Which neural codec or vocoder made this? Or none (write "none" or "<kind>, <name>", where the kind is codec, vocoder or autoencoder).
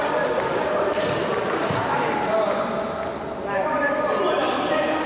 none